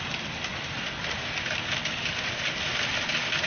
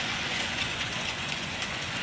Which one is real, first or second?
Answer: first